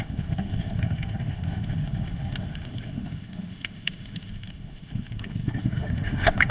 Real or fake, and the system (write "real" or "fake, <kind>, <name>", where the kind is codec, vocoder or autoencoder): fake, autoencoder, DAC-VAE